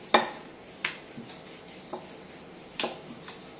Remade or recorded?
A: recorded